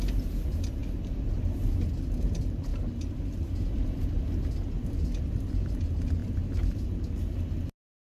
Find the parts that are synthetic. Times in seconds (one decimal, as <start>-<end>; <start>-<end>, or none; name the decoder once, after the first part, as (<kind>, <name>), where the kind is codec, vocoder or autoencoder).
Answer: none